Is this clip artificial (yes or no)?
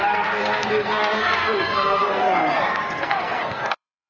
yes